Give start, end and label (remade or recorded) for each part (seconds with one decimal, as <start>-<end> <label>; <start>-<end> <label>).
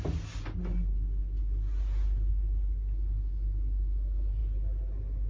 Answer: 0.0-5.3 recorded